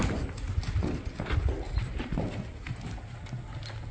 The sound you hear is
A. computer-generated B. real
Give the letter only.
B